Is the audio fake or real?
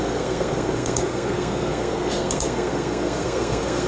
fake